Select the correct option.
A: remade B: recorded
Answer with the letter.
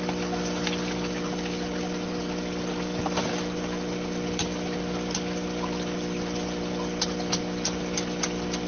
B